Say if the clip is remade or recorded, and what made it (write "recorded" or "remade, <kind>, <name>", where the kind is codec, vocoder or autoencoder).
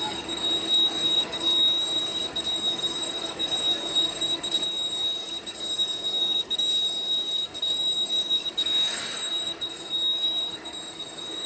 remade, codec, DAC